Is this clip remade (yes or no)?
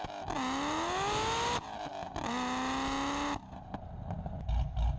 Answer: no